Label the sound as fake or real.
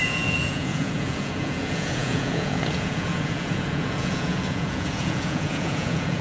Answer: fake